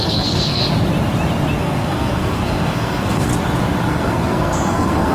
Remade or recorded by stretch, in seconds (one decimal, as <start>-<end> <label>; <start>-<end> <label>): 0.0-0.6 remade; 0.6-1.6 recorded; 1.6-3.3 remade; 3.3-3.9 recorded; 3.9-5.1 remade